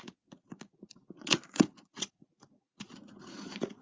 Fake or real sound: fake